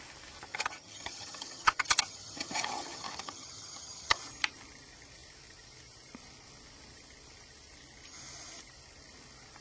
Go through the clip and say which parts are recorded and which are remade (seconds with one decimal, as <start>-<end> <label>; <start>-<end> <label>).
0.0-0.5 recorded; 0.5-4.2 remade; 4.2-9.6 recorded